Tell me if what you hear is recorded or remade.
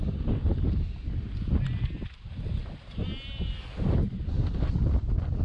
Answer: recorded